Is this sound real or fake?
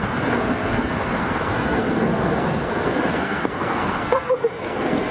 fake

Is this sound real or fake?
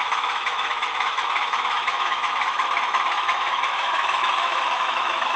fake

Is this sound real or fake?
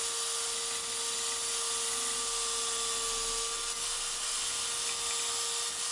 real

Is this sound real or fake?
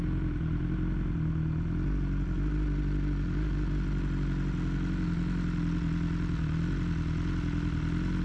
real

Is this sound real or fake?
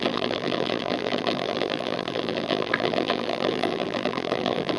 fake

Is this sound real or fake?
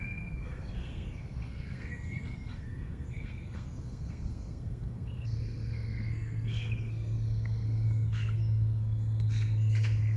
fake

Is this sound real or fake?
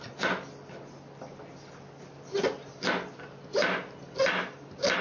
real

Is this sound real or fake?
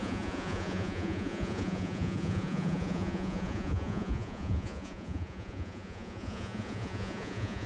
fake